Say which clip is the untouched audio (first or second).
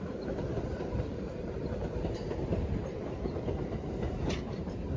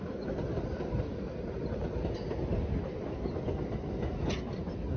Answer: second